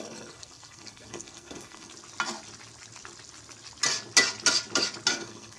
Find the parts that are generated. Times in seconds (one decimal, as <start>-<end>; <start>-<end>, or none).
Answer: 0.0-1.9; 5.1-5.6